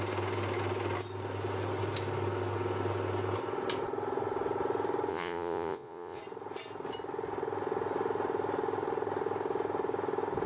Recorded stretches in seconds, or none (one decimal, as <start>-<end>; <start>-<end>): 0.0-5.1; 6.2-10.5